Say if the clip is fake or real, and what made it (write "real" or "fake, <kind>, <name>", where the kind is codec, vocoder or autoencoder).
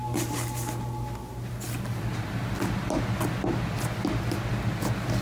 real